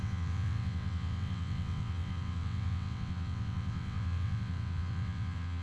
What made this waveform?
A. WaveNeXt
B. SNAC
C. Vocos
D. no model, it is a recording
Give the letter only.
A